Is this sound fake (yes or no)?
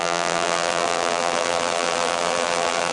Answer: yes